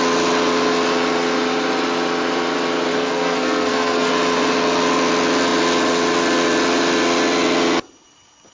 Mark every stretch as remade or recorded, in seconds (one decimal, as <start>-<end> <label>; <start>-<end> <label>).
0.0-2.9 recorded; 2.9-4.1 remade; 4.1-8.5 recorded